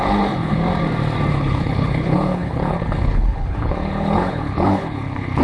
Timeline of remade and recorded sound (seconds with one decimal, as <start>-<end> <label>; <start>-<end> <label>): 0.0-0.6 remade; 0.6-1.3 recorded; 1.3-5.4 remade